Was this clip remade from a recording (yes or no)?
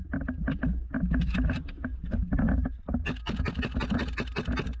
no